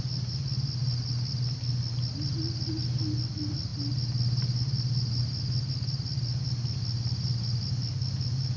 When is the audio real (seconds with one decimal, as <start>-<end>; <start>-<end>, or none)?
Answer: 0.0-8.6